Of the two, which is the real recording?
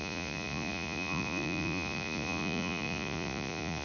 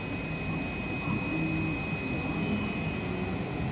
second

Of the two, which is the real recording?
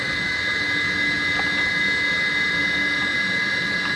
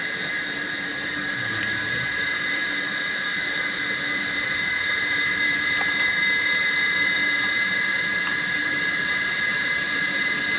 first